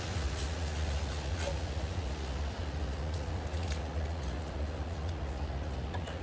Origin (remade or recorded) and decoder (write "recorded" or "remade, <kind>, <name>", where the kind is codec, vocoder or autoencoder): remade, vocoder, Vocos